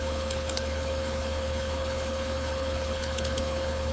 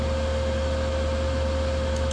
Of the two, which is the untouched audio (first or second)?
second